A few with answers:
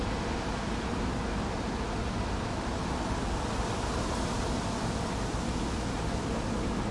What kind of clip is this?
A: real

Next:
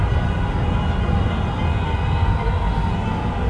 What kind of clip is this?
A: real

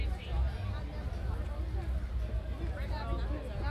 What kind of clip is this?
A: real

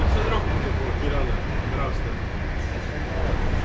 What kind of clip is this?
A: real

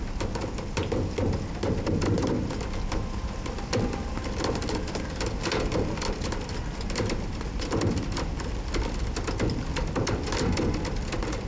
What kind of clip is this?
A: real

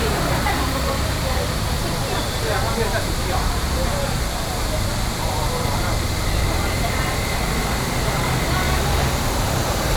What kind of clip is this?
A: fake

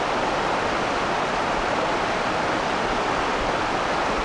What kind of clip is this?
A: real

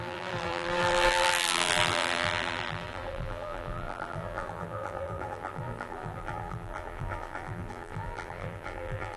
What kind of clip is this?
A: fake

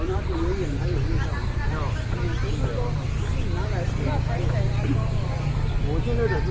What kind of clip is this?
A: real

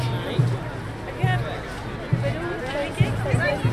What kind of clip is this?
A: real